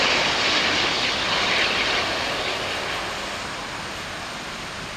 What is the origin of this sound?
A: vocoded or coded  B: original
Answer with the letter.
B